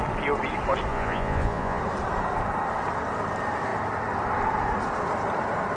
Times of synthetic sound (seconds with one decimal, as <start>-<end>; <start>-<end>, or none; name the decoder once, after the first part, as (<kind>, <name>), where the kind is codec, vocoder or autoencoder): 0.9-1.8 (vocoder, Vocos)